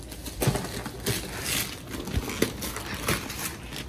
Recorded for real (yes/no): yes